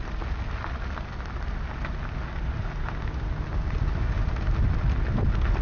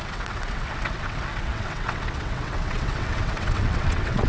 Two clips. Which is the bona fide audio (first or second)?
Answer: first